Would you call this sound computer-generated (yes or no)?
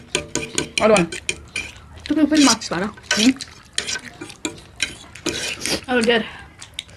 no